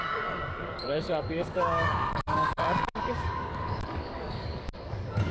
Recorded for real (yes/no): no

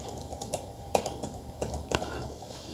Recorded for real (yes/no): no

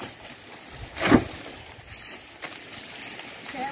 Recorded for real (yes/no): yes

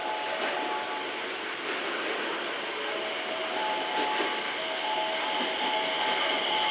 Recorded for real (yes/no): yes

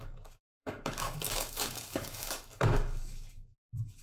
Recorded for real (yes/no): no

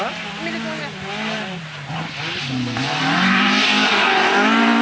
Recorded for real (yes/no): yes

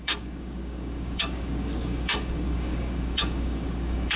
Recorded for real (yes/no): no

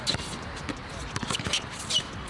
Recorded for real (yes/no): yes